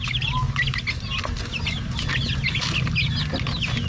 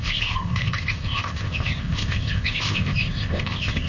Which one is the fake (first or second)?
second